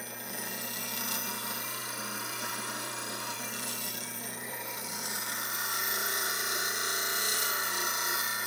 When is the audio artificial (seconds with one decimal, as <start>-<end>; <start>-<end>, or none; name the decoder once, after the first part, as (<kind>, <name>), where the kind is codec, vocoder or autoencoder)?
1.8-6.3 (vocoder, BigVGAN v2)